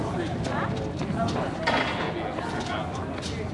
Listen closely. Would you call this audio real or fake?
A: real